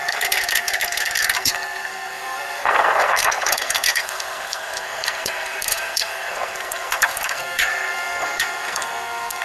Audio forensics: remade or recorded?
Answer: remade